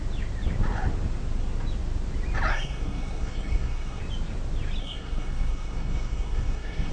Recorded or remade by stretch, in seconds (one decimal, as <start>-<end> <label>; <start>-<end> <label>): 0.0-2.5 recorded; 2.5-4.0 remade; 4.0-4.8 recorded; 4.8-6.9 remade